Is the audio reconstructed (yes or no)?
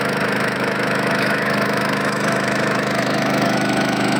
yes